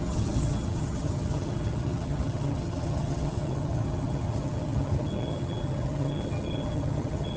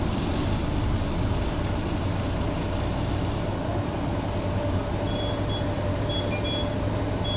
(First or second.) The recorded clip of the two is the second